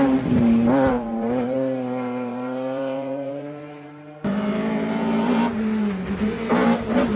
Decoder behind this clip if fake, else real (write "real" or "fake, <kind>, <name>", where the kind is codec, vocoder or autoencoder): fake, vocoder, BigVGAN v2